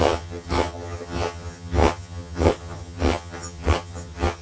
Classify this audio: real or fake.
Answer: fake